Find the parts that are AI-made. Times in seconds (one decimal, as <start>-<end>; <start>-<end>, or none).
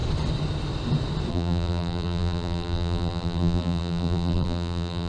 1.3-5.1